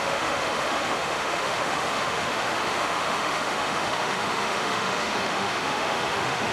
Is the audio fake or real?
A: fake